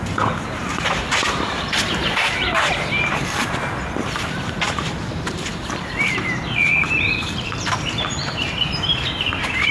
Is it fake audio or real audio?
fake